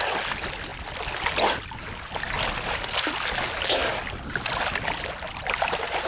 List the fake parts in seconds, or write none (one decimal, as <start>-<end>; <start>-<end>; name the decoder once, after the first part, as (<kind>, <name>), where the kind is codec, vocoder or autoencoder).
none